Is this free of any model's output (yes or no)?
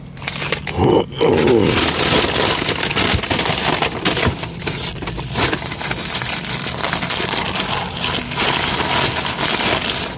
yes